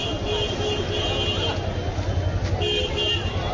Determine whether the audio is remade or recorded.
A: recorded